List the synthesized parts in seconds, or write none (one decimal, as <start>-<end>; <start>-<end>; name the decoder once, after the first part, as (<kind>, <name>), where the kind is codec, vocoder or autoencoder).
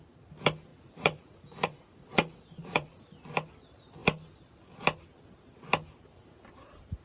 0.7-3.0 (vocoder, Vocos)